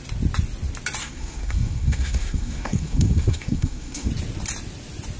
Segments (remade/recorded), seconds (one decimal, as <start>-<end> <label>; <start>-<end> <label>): 0.0-1.0 recorded; 1.0-4.1 remade; 4.1-5.2 recorded